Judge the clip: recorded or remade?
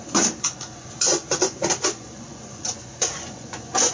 remade